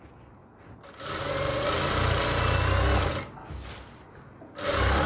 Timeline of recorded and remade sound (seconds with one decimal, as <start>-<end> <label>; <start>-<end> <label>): 0.0-5.1 recorded